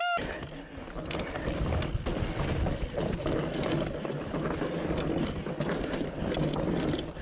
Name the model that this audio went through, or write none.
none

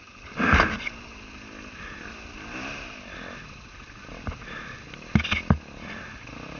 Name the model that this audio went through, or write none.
none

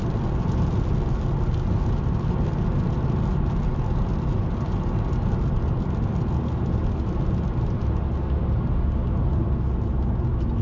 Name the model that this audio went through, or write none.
none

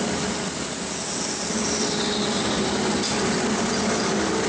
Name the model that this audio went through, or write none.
none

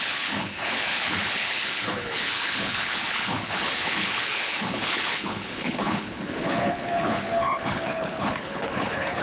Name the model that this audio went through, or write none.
codec, HILCodec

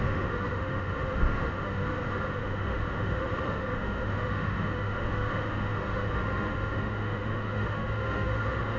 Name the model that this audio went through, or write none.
autoencoder, DAC-VAE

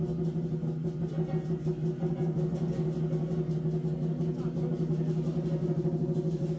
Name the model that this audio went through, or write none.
none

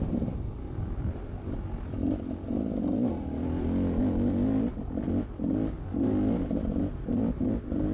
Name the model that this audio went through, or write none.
none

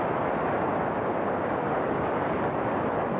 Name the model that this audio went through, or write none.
none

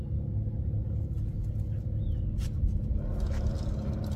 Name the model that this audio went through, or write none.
none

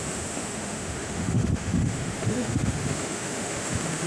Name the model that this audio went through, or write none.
autoencoder, DAC-VAE